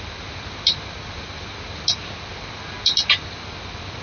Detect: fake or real real